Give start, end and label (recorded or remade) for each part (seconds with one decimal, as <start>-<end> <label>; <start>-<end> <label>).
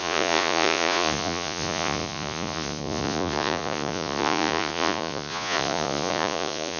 0.0-6.8 remade